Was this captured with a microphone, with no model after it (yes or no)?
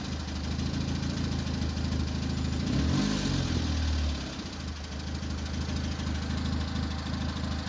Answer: yes